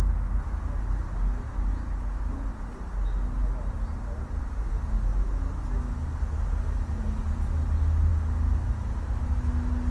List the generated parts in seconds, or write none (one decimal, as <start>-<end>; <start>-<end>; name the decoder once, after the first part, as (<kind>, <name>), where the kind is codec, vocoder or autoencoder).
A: none